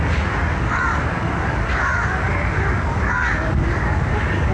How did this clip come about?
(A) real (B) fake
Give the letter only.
B